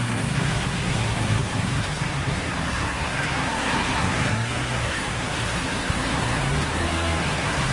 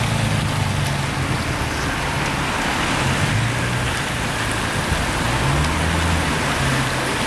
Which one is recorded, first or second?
second